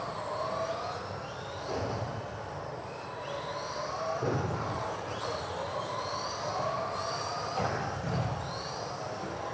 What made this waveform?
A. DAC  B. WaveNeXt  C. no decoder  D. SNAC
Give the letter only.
C